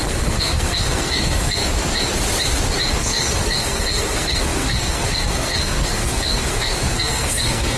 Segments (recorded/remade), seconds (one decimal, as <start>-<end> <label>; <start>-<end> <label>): 0.0-1.6 remade; 1.6-3.0 recorded; 3.0-7.8 remade